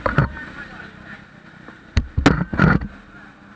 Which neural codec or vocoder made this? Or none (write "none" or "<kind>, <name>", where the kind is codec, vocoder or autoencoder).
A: none